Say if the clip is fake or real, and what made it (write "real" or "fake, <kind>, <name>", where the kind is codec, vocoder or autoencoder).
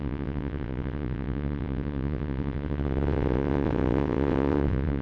fake, vocoder, WaveNeXt